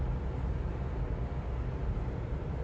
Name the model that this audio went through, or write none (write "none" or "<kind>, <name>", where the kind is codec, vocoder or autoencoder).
none